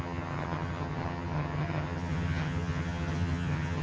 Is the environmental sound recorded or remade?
remade